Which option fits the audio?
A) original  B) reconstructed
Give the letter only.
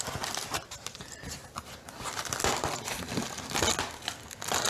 A